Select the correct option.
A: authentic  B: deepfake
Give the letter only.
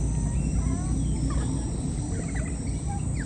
A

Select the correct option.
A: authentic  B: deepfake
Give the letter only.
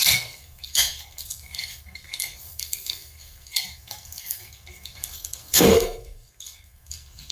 B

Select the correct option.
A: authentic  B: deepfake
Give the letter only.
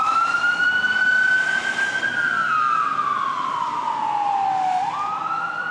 A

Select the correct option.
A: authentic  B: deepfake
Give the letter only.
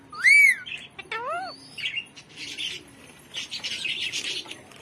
A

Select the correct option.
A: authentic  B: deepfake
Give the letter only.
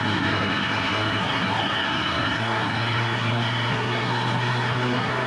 B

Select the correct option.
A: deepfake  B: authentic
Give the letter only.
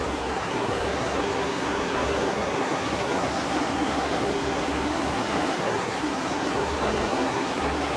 A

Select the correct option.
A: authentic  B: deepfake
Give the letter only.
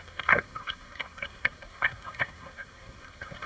B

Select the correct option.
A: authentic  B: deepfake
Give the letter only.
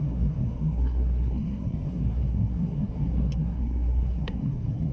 B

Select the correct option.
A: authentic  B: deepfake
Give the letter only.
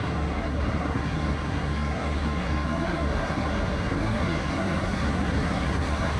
B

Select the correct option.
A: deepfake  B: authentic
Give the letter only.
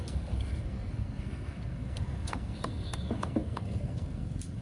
A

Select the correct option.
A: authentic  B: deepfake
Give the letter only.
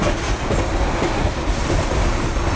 A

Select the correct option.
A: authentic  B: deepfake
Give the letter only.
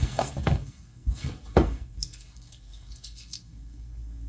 B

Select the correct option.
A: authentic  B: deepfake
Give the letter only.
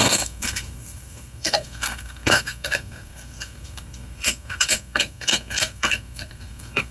B